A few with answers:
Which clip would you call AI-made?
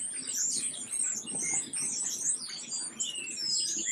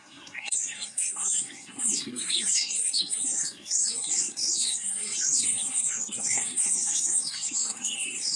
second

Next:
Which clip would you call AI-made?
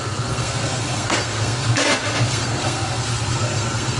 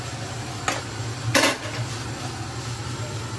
first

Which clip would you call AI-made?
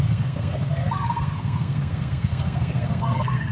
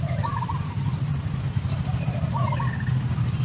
first